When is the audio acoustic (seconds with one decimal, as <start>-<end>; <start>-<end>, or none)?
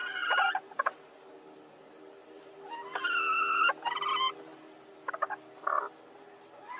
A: 0.0-6.8